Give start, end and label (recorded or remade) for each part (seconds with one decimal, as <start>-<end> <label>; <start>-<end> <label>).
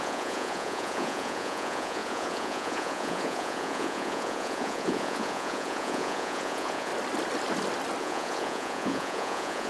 0.0-6.9 remade; 6.9-8.0 recorded; 8.0-9.7 remade